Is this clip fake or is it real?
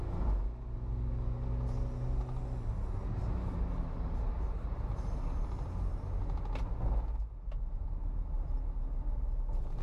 real